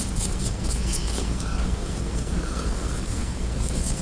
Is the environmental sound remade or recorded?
remade